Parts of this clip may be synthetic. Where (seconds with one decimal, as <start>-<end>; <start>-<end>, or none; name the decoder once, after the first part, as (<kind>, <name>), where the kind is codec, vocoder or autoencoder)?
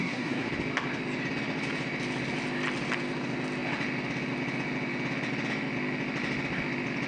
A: 0.0-0.5 (codec, SNAC)